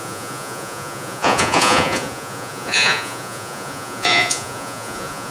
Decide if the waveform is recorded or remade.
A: remade